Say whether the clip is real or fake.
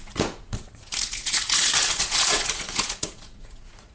fake